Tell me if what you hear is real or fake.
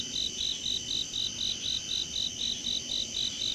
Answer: real